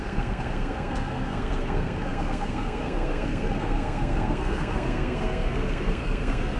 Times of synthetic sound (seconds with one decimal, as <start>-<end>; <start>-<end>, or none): 0.0-6.6